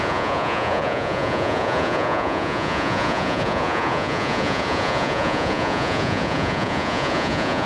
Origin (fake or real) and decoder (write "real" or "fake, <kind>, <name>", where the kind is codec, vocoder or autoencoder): fake, vocoder, Vocos